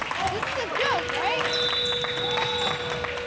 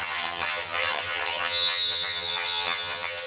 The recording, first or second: first